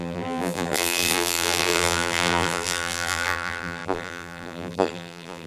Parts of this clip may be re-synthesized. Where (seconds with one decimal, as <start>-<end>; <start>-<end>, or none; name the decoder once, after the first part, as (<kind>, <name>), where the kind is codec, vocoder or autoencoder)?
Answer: 0.0-5.5 (vocoder, BigVGAN v2)